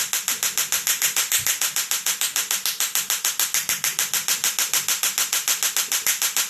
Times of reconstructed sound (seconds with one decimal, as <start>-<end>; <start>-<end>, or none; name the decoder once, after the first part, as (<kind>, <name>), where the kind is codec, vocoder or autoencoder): none